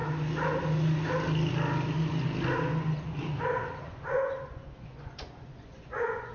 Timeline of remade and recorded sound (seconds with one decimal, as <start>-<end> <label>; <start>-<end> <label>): 0.0-3.8 recorded; 3.8-6.3 remade